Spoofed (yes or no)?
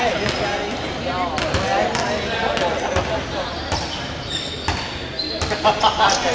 no